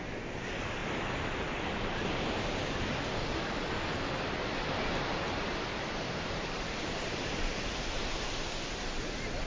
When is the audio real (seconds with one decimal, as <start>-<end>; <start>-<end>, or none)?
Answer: 0.0-5.7; 8.5-9.5